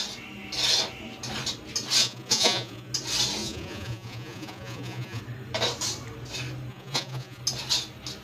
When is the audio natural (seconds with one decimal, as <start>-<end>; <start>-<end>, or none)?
0.0-2.0; 2.9-3.4; 5.2-6.7; 7.4-8.2